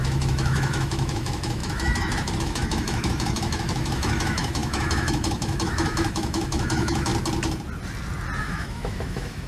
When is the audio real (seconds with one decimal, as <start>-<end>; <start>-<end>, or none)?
7.1-8.4